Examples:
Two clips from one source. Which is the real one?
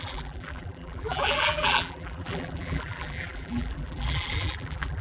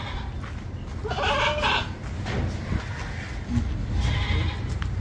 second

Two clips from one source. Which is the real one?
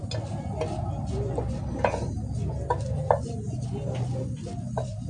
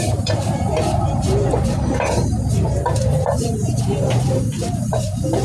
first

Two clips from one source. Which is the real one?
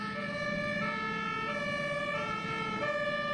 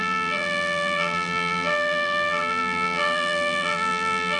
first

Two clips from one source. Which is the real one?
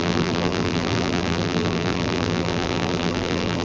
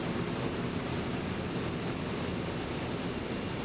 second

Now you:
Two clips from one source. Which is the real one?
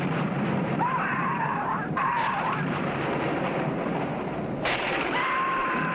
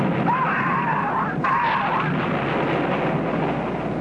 second